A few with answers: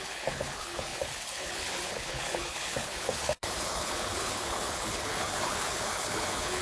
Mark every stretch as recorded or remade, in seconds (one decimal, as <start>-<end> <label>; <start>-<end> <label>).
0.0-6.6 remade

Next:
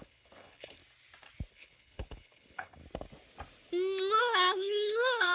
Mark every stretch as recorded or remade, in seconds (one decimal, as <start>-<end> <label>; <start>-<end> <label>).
0.0-0.8 remade; 0.8-1.5 recorded; 1.5-2.8 remade; 2.8-4.2 recorded; 4.2-5.3 remade

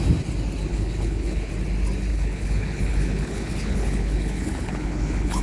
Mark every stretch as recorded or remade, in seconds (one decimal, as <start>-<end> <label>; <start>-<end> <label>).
0.0-0.7 recorded; 0.7-1.5 remade; 1.5-2.1 recorded; 2.1-5.4 remade

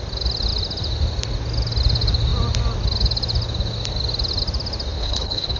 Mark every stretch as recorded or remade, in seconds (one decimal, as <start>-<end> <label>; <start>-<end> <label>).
0.0-4.9 recorded; 4.9-5.6 remade